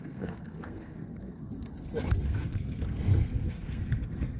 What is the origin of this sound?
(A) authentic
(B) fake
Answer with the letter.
B